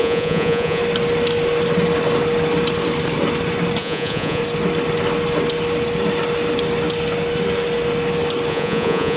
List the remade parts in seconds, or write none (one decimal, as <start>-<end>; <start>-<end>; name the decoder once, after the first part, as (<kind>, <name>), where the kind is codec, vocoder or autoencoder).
0.0-0.8 (vocoder, Vocos); 3.8-4.4; 8.5-9.2